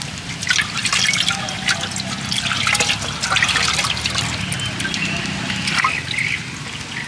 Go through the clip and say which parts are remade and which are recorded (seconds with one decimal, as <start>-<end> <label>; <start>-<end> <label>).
0.0-7.1 recorded